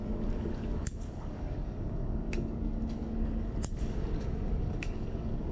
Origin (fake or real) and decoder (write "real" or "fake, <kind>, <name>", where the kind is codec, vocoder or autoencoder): fake, codec, DAC